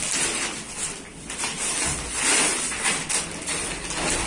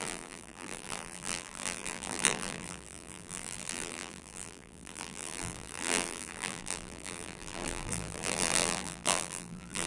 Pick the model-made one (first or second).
second